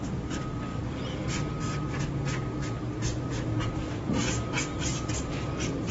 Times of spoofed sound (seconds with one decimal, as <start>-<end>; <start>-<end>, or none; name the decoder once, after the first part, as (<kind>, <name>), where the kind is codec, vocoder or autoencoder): none